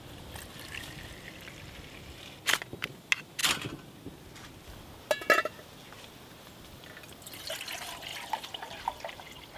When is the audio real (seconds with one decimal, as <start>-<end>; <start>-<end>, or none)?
0.0-8.1; 9.2-9.6